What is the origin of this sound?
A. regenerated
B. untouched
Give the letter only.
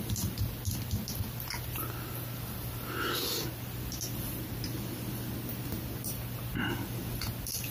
A